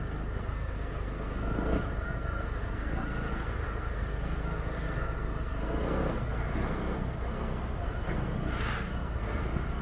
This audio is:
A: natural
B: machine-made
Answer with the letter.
B